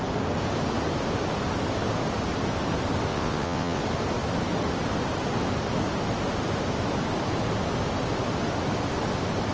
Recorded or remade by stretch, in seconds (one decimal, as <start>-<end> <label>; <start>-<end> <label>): 0.0-3.1 recorded; 3.1-3.8 remade; 3.8-9.5 recorded